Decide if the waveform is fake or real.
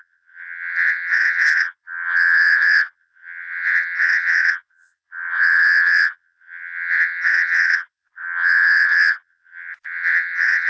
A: fake